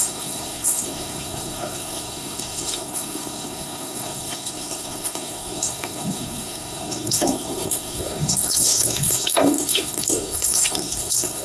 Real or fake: fake